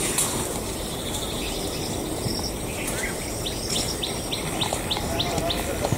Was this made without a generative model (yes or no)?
yes